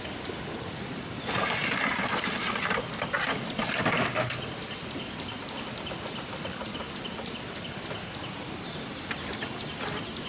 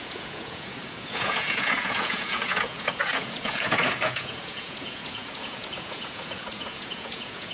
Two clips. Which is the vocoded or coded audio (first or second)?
second